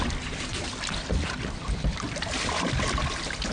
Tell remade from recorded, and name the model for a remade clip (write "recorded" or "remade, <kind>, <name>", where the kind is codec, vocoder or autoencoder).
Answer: remade, vocoder, BigVGAN v2